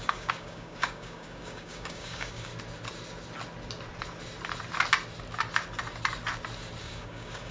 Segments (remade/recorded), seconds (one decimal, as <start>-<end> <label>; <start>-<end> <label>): 0.0-2.5 remade; 2.5-6.8 recorded; 6.8-7.5 remade